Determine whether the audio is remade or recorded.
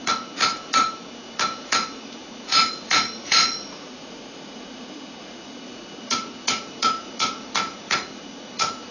remade